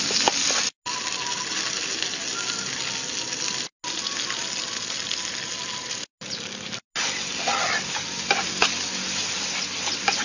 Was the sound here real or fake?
real